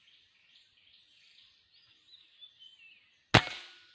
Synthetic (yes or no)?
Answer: no